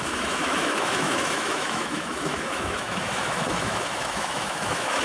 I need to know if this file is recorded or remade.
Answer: remade